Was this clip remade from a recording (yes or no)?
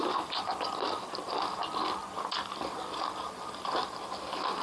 no